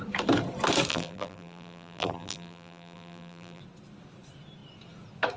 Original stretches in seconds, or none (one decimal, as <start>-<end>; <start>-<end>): 0.0-0.9; 3.6-5.4